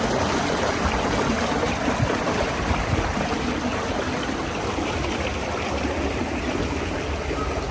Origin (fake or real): fake